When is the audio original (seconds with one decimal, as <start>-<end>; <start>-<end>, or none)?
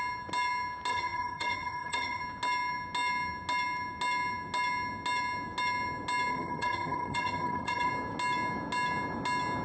0.0-0.9; 2.2-6.3; 7.9-9.6